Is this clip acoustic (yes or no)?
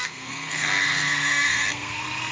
no